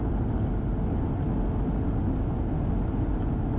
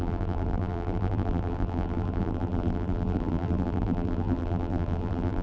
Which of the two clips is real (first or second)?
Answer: first